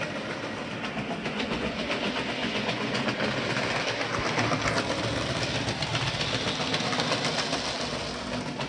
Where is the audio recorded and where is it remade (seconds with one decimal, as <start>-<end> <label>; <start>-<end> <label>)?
0.0-1.2 recorded; 1.2-1.8 remade; 1.8-2.4 recorded; 2.4-3.0 remade; 3.0-8.7 recorded